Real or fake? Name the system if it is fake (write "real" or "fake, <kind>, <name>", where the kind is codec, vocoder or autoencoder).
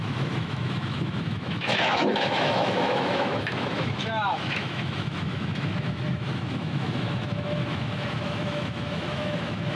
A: fake, autoencoder, DAC-VAE